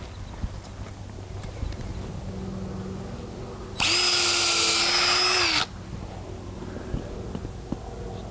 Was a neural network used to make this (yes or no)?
no